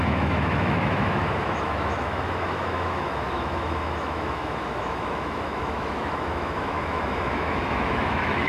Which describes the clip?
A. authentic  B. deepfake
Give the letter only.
B